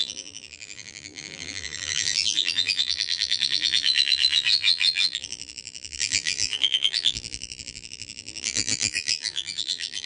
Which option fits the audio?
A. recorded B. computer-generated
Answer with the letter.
B